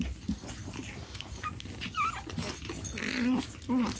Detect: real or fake real